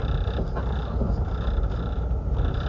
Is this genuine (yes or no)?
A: yes